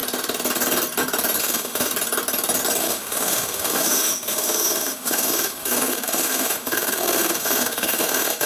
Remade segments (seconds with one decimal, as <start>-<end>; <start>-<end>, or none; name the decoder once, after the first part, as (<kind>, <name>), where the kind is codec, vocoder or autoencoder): 1.4-1.9 (autoencoder, DAC-VAE); 2.8-8.5